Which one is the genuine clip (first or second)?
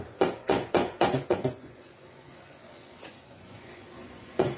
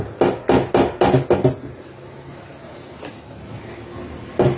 second